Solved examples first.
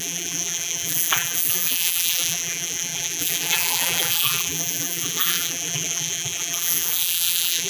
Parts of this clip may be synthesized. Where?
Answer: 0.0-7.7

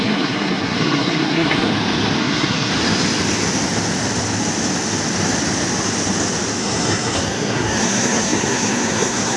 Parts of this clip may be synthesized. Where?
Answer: 0.0-1.7; 2.2-2.7; 6.6-9.4

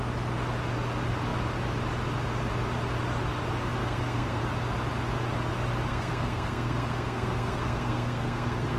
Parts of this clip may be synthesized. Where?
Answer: 3.8-4.4; 5.9-8.8